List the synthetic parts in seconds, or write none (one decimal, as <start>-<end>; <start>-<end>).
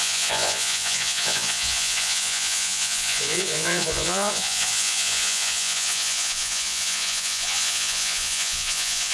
0.0-9.1